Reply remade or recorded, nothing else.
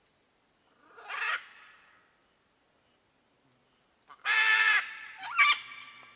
recorded